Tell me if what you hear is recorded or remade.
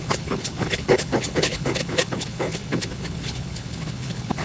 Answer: remade